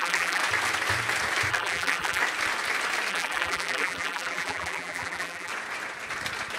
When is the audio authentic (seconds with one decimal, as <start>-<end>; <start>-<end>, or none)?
0.4-1.5; 2.2-3.1; 5.5-6.6